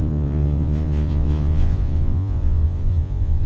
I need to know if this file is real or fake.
fake